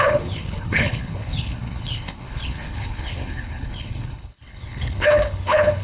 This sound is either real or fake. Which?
fake